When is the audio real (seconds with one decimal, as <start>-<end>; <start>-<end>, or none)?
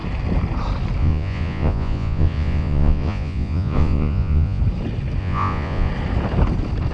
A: 0.0-1.0; 4.6-5.2; 5.9-6.9